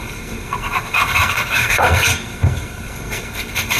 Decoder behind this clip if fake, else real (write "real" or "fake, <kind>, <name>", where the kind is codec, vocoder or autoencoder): fake, codec, SNAC